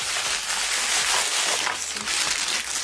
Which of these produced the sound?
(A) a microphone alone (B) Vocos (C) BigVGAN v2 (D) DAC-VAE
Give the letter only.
A